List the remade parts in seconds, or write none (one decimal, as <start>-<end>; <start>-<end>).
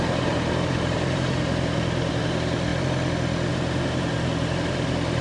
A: 0.0-2.7; 3.5-5.2